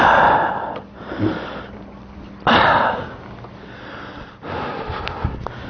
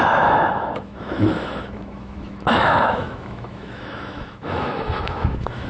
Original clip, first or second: first